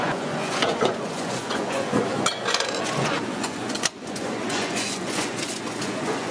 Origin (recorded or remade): remade